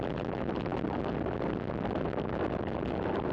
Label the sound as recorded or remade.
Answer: recorded